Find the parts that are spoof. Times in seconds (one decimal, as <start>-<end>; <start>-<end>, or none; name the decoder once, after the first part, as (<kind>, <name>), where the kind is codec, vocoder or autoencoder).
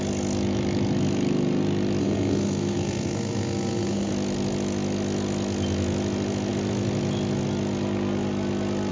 2.0-4.1 (codec, SNAC)